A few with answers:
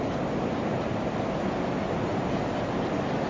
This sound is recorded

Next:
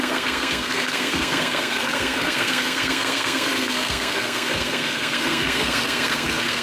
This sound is remade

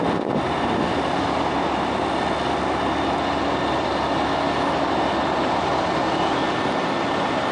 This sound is recorded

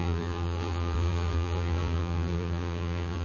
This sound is remade